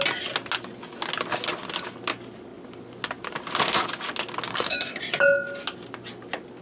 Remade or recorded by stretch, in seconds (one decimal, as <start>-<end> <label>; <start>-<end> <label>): 0.0-4.5 recorded; 4.5-5.0 remade; 5.0-6.6 recorded